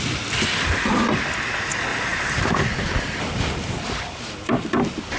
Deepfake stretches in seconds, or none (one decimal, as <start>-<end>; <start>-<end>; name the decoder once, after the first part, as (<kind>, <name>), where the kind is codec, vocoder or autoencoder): 1.9-5.2 (vocoder, BigVGAN v2)

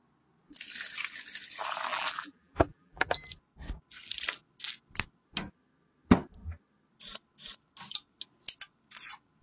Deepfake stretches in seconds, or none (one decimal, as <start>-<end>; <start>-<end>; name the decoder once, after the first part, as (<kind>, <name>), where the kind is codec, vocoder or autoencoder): 1.9-3.2 (vocoder, BigVGAN v2)

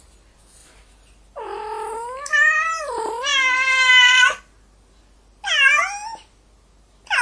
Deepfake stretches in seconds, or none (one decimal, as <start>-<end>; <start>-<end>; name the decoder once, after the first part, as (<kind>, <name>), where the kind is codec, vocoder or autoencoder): 0.6-2.8 (vocoder, BigVGAN v2)

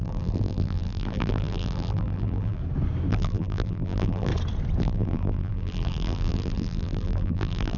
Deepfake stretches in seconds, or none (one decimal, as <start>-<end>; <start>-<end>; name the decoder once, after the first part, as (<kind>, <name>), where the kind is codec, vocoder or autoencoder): 0.0-2.6 (vocoder, BigVGAN v2); 3.1-4.3; 4.8-7.8

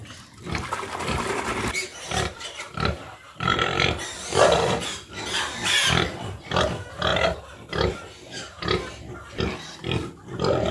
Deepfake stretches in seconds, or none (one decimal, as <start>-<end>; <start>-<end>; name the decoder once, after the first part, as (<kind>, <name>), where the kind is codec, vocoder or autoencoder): 1.9-3.6 (vocoder, BigVGAN v2)

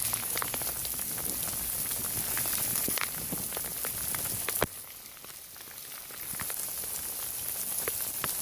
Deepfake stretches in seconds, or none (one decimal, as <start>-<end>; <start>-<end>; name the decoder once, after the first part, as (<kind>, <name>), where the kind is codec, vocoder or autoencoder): 0.8-1.5 (vocoder, BigVGAN v2)

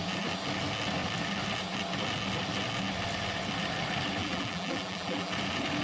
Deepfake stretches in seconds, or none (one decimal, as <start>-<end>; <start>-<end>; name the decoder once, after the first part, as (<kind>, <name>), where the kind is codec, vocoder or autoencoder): 4.2-5.3 (vocoder, BigVGAN v2)